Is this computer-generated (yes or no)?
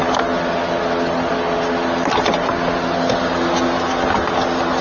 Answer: no